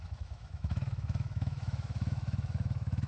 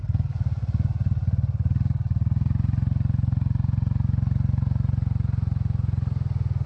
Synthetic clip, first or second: first